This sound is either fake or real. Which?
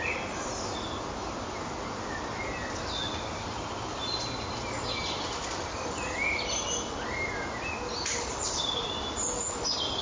real